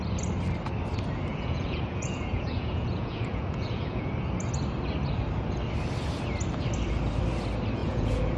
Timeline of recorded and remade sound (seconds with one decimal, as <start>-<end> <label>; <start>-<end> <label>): 0.0-1.3 recorded; 1.3-4.1 remade; 4.1-7.8 recorded; 7.8-8.4 remade